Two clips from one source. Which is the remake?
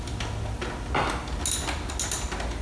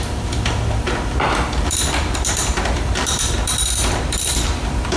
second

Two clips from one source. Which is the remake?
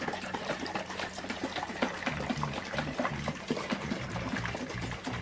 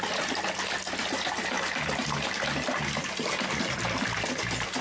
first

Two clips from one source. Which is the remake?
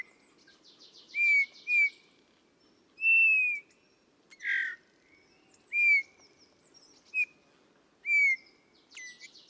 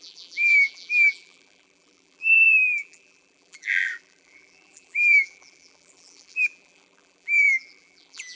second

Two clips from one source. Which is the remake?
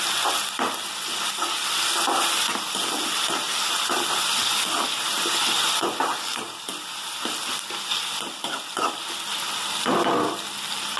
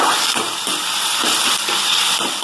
second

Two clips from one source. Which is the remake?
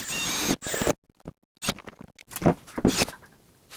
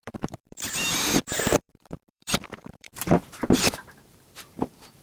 second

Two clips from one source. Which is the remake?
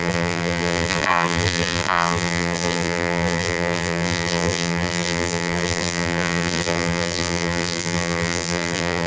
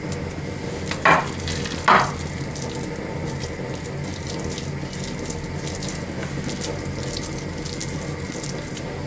first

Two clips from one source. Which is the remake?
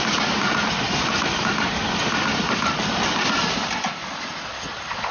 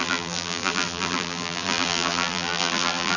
second